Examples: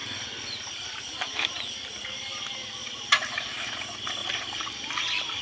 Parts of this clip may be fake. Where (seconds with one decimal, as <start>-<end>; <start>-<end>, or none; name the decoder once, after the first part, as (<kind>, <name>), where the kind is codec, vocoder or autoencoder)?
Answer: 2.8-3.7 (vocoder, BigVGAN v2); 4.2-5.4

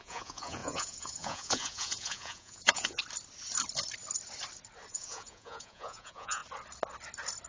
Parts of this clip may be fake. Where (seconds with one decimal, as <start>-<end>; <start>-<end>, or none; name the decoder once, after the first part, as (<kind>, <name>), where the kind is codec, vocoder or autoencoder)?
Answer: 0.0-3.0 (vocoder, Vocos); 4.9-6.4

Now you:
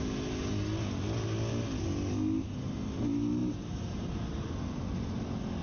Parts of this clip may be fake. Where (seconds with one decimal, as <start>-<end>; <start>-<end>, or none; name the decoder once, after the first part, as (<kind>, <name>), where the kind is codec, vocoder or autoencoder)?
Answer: 3.4-4.8 (vocoder, BigVGAN v2)

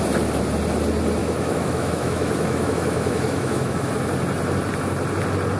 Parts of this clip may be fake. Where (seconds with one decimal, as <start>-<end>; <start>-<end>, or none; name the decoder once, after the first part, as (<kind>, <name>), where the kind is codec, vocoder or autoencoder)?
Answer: 1.2-3.9 (autoencoder, DAC-VAE)

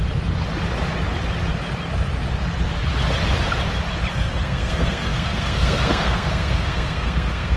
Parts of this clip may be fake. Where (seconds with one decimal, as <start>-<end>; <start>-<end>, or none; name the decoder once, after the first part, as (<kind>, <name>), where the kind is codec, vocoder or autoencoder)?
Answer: 4.1-7.6 (codec, SNAC)